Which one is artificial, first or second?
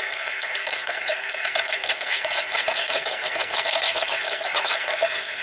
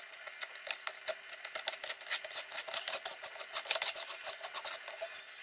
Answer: first